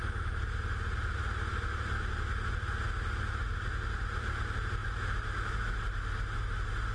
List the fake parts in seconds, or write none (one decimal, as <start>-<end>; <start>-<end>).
none